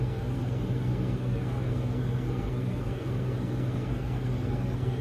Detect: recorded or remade remade